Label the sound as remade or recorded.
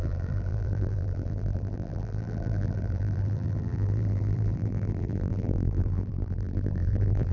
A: remade